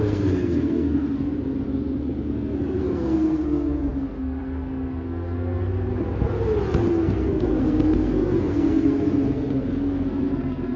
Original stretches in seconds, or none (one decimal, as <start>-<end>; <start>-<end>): 1.3-2.0; 5.9-6.9